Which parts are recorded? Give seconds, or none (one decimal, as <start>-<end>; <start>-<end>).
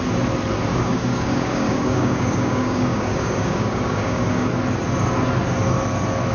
0.0-0.7; 4.5-6.3